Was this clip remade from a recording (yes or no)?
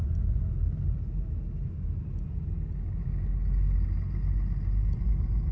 no